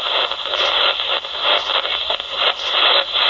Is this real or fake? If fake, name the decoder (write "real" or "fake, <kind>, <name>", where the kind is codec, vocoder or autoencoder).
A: real